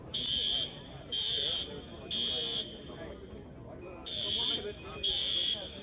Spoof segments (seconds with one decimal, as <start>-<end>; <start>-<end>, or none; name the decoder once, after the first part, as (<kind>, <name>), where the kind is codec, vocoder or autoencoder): 0.0-1.6 (vocoder, BigVGAN v2); 4.0-5.8